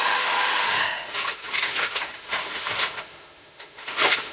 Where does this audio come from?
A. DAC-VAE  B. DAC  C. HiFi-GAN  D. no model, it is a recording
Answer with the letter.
A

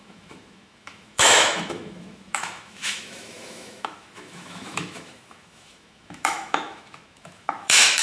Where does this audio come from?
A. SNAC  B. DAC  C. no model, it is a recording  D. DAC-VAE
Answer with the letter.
D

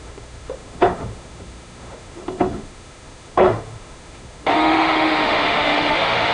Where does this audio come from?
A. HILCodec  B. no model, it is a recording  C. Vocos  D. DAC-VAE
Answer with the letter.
D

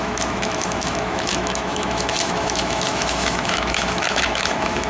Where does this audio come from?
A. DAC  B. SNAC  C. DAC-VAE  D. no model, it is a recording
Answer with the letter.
C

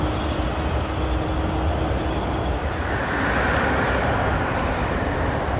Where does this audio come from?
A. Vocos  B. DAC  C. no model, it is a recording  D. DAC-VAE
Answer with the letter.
C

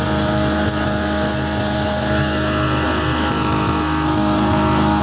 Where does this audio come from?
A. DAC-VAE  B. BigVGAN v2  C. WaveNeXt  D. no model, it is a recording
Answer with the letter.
D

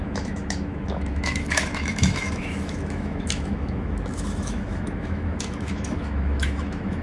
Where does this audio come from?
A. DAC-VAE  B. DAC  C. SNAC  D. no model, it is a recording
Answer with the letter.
A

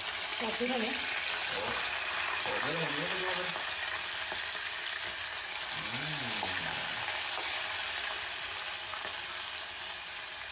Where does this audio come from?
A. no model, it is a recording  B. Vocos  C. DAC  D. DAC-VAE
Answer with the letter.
A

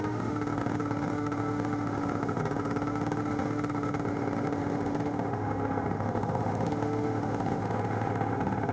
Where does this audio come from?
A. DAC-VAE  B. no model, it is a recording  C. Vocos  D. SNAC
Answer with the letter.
A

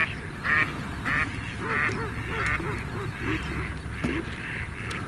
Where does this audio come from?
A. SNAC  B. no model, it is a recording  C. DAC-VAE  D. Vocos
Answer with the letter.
B